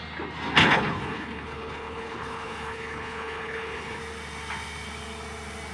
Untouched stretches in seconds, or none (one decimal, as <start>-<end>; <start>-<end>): 0.0-0.6; 4.0-5.7